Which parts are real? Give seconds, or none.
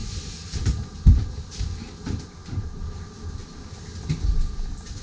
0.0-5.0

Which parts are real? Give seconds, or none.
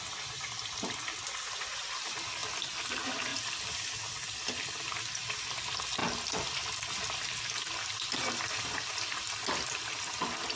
0.0-10.6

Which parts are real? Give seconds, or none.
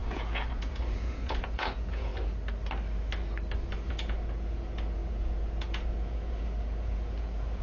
2.1-3.9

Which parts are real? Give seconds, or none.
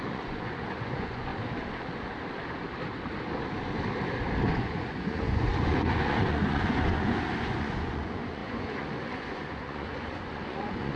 1.3-4.4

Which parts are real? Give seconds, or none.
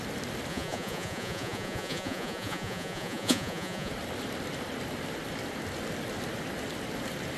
0.0-0.5; 3.9-7.4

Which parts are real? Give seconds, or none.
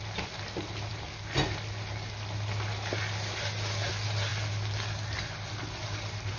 0.0-6.4